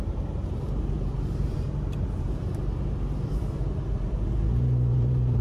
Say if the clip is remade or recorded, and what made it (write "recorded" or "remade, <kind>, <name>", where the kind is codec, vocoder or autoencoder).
remade, vocoder, BigVGAN v2